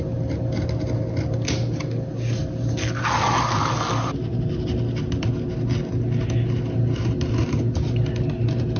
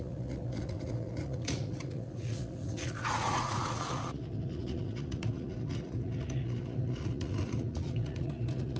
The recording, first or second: first